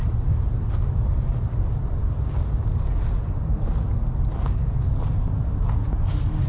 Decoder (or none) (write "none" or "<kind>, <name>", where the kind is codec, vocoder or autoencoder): none